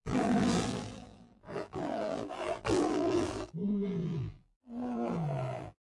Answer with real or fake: fake